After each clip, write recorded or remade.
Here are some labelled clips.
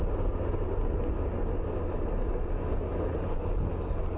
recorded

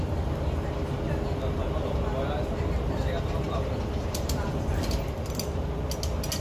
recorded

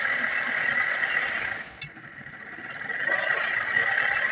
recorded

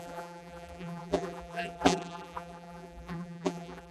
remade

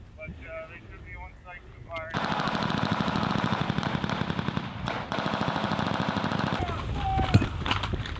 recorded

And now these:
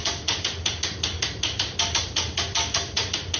recorded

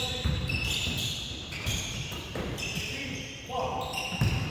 remade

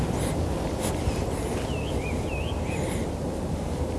remade